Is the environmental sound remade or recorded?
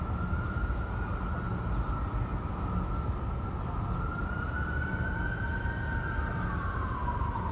recorded